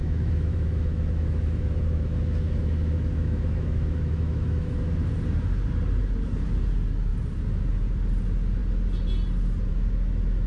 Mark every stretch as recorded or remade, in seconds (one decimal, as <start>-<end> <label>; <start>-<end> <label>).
0.0-4.9 remade; 4.9-10.5 recorded